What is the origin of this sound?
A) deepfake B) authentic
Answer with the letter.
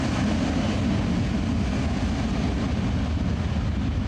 B